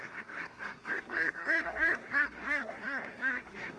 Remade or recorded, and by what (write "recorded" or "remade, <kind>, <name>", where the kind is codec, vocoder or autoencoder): remade, codec, SNAC